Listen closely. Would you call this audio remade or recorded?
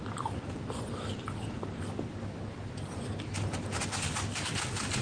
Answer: recorded